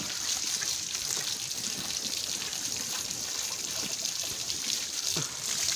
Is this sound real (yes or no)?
no